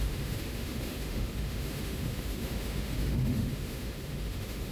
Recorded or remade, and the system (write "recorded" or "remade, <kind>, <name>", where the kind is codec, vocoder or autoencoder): remade, autoencoder, DAC-VAE